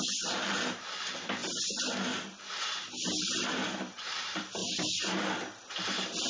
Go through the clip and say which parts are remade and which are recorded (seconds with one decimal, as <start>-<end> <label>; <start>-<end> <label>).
0.0-1.4 remade; 1.4-3.2 recorded; 3.2-4.6 remade; 4.6-6.3 recorded